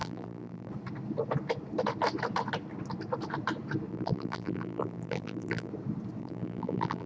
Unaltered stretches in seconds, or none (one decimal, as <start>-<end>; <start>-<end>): 0.7-3.9; 5.7-6.2